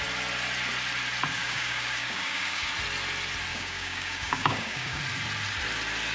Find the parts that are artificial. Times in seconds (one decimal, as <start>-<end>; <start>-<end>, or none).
1.4-2.7; 3.5-5.0